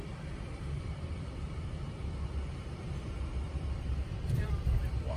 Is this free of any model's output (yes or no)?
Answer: no